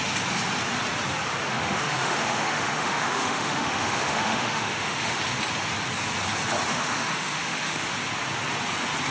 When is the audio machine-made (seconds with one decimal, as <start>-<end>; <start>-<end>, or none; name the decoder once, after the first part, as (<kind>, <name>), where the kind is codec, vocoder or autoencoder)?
1.5-5.2 (autoencoder, DAC-VAE); 6.7-7.9